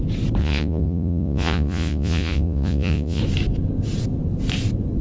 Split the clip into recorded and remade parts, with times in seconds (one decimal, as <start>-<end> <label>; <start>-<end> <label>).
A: 0.0-0.4 recorded; 0.4-3.2 remade; 3.2-5.0 recorded